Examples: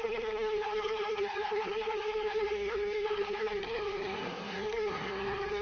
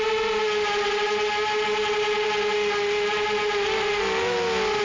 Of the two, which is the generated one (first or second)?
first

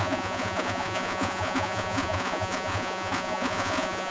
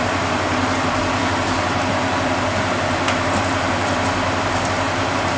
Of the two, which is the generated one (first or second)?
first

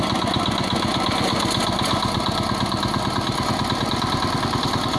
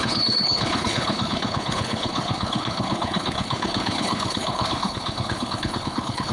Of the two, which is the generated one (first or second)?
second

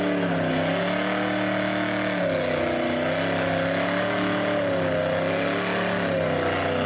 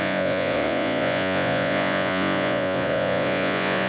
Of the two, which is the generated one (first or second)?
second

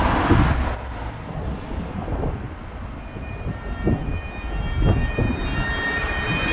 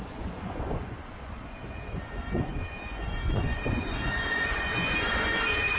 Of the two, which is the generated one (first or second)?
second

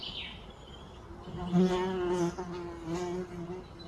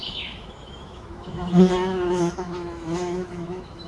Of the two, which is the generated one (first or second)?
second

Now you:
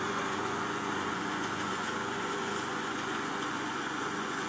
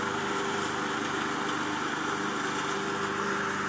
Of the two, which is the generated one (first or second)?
first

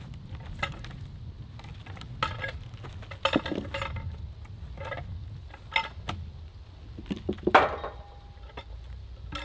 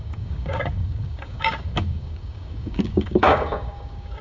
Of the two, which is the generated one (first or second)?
second